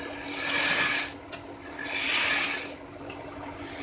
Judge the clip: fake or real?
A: real